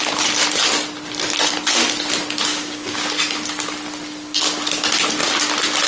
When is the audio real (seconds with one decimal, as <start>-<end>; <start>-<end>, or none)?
0.0-2.5; 3.1-5.9